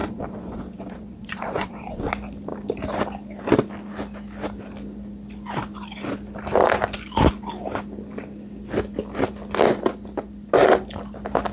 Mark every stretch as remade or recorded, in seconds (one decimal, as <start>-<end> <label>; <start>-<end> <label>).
0.0-2.1 remade; 2.1-11.5 recorded